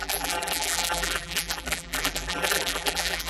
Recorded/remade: remade